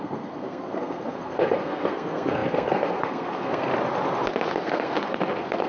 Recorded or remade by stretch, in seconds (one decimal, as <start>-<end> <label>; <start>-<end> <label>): 0.0-3.7 remade; 3.7-4.5 recorded; 4.5-5.7 remade